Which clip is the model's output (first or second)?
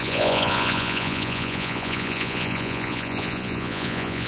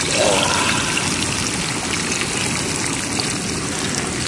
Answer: first